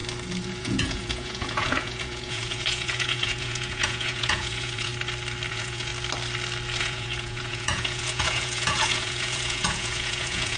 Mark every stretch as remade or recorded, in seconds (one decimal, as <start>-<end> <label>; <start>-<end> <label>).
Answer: 0.0-0.6 recorded; 0.6-4.9 remade; 4.9-5.5 recorded; 5.5-5.9 remade; 5.9-6.8 recorded; 6.8-10.6 remade